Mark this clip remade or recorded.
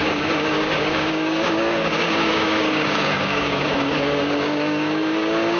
remade